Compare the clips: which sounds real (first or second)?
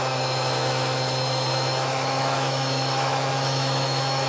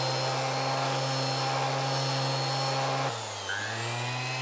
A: second